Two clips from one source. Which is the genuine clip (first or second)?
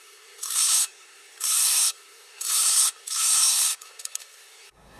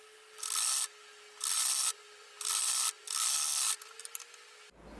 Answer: second